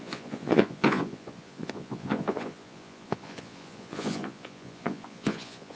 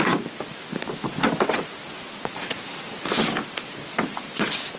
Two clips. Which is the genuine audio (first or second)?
second